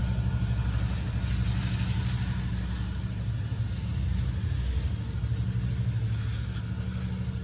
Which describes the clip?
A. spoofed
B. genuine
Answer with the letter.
B